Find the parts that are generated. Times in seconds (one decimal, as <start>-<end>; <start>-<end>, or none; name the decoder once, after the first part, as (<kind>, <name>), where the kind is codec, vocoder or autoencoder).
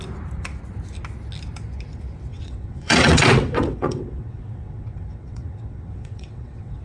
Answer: 2.3-6.8 (vocoder, WaveNeXt)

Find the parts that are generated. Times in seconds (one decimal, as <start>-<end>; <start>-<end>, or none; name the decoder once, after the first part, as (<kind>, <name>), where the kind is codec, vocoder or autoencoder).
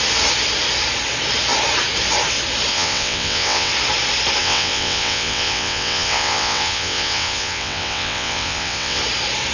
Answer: 2.7-3.7 (vocoder, WaveNeXt); 4.4-9.0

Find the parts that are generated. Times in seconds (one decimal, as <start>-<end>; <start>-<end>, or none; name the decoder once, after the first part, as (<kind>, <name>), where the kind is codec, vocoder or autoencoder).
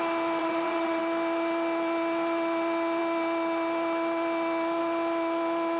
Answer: 0.4-1.0 (vocoder, WaveNeXt)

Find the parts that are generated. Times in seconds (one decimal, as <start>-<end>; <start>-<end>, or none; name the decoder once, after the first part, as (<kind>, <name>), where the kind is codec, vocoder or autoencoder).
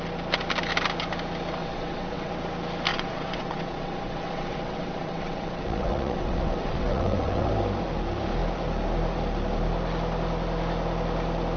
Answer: 1.6-2.3 (vocoder, WaveNeXt); 2.9-7.5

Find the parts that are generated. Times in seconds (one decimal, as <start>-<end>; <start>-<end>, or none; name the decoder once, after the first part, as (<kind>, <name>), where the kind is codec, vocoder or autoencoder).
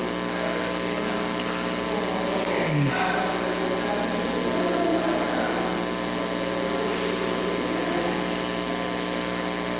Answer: none